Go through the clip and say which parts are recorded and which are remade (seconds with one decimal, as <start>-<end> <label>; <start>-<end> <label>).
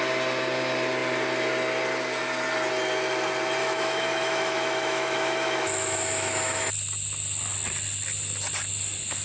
0.0-3.6 recorded; 3.6-6.7 remade; 6.7-9.2 recorded